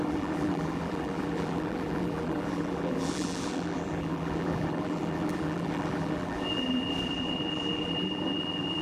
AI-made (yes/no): yes